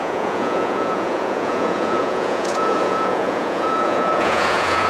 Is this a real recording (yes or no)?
no